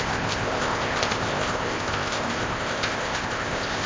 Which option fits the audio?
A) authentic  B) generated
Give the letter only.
B